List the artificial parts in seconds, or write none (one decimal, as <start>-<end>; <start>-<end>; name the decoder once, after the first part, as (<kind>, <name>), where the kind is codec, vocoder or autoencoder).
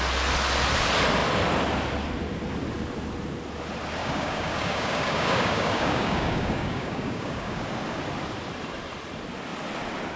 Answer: 4.0-7.6 (codec, DAC)